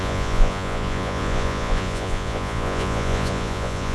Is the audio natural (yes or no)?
no